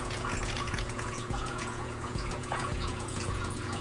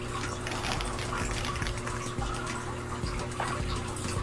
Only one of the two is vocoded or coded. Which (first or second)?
first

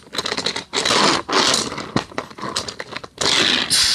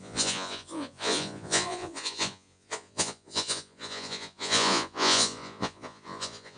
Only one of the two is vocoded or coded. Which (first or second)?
second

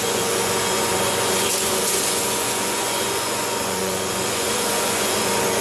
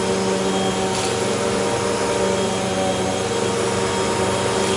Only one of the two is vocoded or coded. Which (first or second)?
first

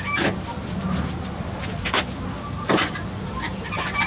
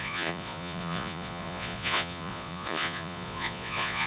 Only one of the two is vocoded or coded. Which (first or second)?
second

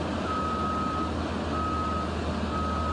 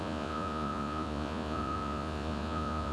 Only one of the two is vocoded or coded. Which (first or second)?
second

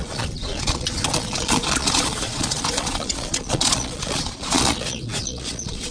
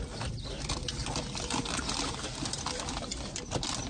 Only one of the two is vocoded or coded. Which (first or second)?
first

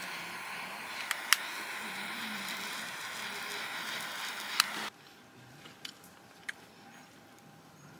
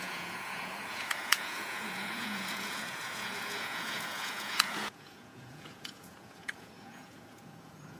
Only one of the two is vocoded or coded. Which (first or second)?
second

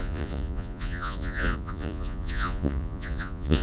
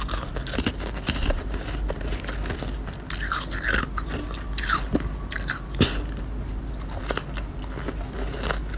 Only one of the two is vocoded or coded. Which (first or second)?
first